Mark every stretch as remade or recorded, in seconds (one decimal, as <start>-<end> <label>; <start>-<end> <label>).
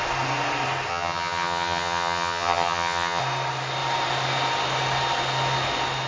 0.0-0.9 recorded; 0.9-3.2 remade; 3.2-6.1 recorded